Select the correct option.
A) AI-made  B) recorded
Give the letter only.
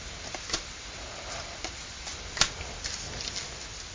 B